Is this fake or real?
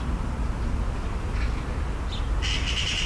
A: real